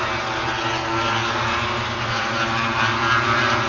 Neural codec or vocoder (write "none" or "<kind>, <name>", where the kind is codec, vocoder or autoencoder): none